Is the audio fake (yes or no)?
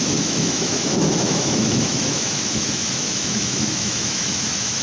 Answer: yes